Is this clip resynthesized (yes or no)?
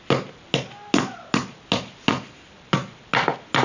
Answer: no